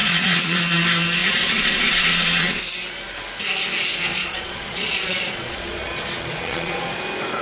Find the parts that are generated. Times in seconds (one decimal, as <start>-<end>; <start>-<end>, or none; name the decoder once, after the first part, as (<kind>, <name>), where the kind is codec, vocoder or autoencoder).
0.0-0.6 (vocoder, Vocos); 1.2-2.6; 4.1-7.0